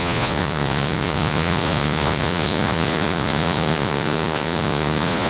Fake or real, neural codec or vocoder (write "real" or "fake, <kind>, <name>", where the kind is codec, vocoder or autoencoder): fake, vocoder, Vocos